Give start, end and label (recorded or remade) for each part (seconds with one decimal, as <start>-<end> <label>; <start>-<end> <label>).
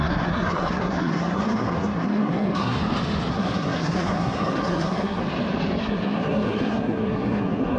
0.0-2.8 remade; 2.8-3.3 recorded; 3.3-5.2 remade; 5.2-5.8 recorded; 5.8-7.8 remade